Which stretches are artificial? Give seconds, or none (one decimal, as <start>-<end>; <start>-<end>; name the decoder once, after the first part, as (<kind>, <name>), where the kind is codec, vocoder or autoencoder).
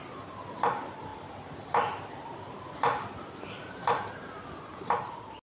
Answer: none